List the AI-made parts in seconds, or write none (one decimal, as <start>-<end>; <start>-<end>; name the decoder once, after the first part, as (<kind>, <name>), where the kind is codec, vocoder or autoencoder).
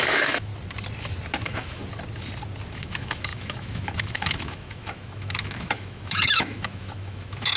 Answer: 0.0-0.5 (autoencoder, DAC-VAE); 1.4-1.8; 2.7-7.6